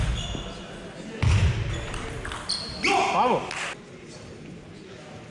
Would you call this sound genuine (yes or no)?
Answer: yes